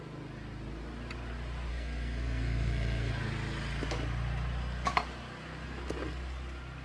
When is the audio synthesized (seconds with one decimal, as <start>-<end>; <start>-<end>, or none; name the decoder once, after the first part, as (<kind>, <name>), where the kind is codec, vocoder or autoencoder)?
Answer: 1.7-3.1 (codec, SNAC)